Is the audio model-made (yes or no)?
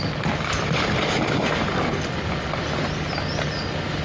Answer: no